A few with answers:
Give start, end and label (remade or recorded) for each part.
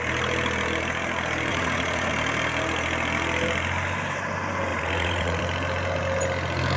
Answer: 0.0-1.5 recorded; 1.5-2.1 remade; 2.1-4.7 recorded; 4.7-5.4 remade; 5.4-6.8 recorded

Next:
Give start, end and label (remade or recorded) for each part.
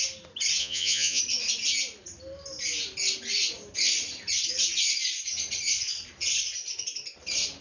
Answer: 0.0-0.6 recorded; 0.6-1.2 remade; 1.2-7.6 recorded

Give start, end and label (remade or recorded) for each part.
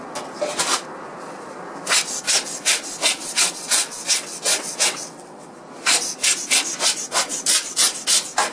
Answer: 0.0-3.2 recorded; 3.2-5.5 remade; 5.5-8.5 recorded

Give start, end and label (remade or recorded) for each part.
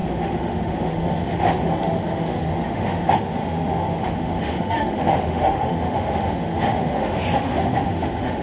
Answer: 0.0-8.4 remade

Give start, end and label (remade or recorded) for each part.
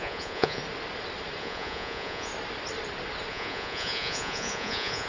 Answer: 0.0-0.6 remade; 0.6-1.4 recorded; 1.4-2.3 remade; 2.3-3.3 recorded; 3.3-5.1 remade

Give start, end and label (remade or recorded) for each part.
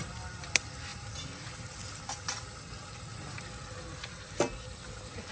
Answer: 0.0-5.3 recorded